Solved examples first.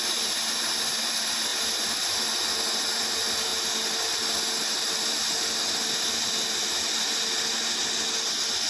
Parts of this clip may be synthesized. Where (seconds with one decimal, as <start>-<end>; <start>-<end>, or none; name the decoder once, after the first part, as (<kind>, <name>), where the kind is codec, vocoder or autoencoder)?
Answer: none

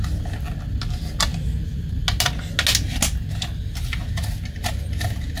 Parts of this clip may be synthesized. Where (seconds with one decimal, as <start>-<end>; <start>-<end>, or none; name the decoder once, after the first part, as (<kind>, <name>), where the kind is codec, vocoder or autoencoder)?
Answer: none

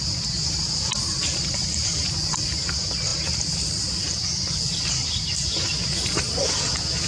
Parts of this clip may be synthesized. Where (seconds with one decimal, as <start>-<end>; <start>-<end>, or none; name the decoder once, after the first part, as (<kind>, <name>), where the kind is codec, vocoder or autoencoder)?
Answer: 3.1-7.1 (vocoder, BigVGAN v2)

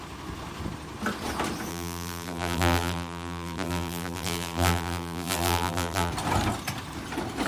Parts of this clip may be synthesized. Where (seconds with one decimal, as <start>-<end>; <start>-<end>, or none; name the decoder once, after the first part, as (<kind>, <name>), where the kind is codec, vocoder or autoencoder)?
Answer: 1.7-6.1 (vocoder, BigVGAN v2)

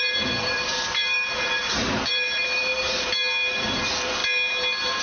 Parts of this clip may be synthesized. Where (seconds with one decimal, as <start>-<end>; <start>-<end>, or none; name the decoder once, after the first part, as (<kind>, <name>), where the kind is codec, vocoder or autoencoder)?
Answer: 0.0-2.7 (vocoder, BigVGAN v2); 3.5-4.2

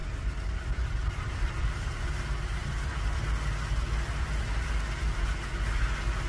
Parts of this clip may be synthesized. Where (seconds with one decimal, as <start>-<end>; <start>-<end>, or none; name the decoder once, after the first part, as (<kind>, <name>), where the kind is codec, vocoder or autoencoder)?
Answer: 0.0-1.9 (vocoder, BigVGAN v2)

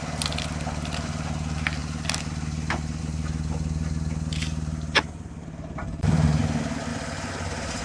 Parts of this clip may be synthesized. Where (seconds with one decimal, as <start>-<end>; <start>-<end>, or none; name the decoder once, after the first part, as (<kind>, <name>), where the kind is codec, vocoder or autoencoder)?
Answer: 5.8-6.4 (vocoder, BigVGAN v2); 6.9-7.8

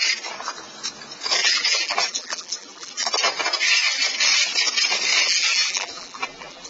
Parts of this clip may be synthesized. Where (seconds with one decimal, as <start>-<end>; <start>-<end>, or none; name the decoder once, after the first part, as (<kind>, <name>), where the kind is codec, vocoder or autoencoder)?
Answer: 1.4-3.1 (vocoder, BigVGAN v2); 5.2-6.7